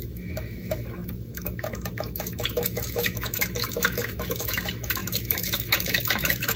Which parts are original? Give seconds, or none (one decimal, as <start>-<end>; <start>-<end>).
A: none

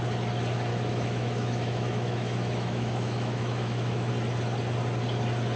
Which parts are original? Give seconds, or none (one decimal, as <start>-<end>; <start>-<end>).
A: 0.0-0.7; 4.1-5.6

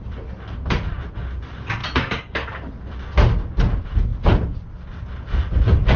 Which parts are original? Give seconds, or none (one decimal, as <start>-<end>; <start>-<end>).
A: 0.0-6.0

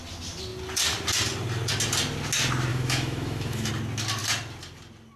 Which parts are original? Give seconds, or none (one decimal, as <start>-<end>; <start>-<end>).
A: 0.0-2.7; 3.7-5.2

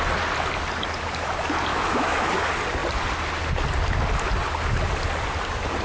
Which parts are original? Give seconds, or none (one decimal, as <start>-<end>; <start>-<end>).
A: 0.0-1.7; 2.4-5.8